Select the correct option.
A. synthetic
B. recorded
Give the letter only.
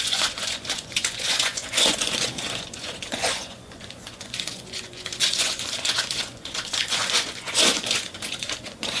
A